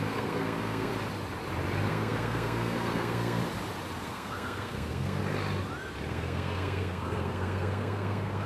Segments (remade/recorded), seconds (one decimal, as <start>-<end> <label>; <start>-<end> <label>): 0.0-0.9 remade; 0.9-1.9 recorded; 1.9-3.4 remade; 3.4-4.0 recorded; 4.0-5.2 remade; 5.2-6.1 recorded; 6.1-8.5 remade